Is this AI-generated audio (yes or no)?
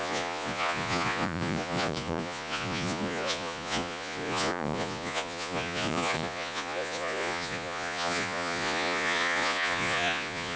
yes